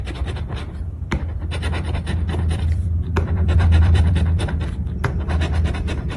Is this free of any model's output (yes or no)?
no